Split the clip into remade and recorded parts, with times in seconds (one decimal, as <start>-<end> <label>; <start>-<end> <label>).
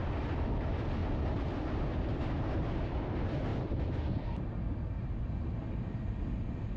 0.0-6.8 recorded